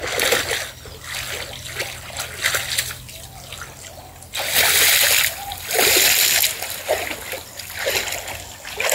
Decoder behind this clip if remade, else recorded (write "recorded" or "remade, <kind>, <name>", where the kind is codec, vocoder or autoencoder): recorded